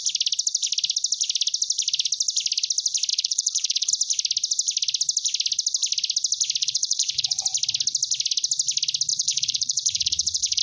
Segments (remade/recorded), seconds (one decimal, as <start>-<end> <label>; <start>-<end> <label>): 0.0-3.1 recorded; 3.1-3.9 remade; 3.9-6.6 recorded; 6.6-7.4 remade; 7.4-9.1 recorded; 9.1-10.6 remade